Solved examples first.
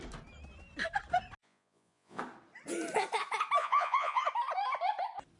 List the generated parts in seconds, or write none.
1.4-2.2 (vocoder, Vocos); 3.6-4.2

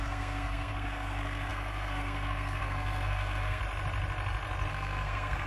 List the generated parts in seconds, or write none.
0.0-3.6 (codec, SNAC); 4.7-5.5

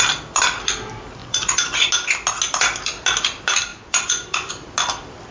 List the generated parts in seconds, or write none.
1.2-1.9 (vocoder, Vocos); 3.7-4.5

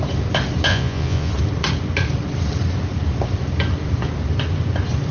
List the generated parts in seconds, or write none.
0.7-1.3 (vocoder, Vocos)

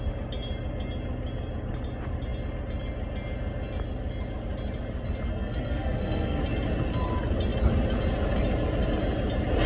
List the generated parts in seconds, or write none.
5.3-6.4 (codec, SNAC)

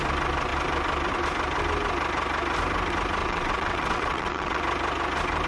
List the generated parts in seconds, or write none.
3.2-4.6 (vocoder, WaveNeXt)

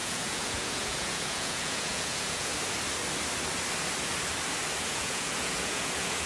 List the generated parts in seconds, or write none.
0.0-2.5 (vocoder, Vocos); 4.8-6.3

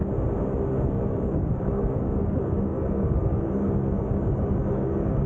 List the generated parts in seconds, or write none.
0.9-5.3 (codec, DAC)